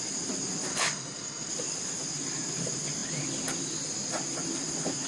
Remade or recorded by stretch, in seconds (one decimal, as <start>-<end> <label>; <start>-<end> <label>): 0.0-0.7 recorded; 0.7-1.5 remade; 1.5-5.1 recorded